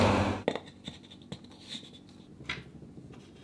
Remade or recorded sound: recorded